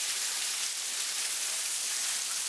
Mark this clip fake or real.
real